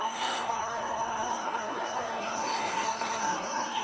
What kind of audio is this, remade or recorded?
remade